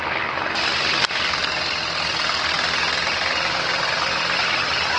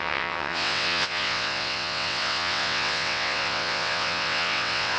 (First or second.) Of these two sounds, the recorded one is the first